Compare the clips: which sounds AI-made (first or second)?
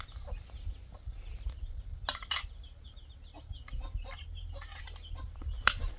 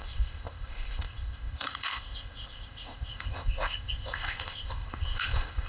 second